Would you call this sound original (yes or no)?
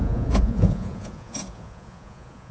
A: no